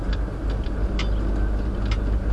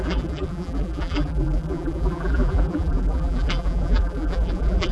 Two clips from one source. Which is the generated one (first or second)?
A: second